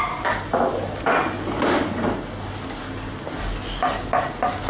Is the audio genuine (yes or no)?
yes